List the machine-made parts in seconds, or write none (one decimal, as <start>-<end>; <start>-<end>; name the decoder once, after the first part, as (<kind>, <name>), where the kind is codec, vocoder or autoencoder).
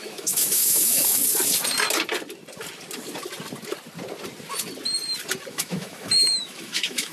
0.0-1.2 (autoencoder, DAC-VAE); 5.5-7.1